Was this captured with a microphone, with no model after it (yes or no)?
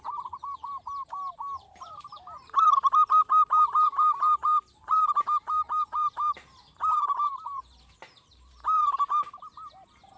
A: no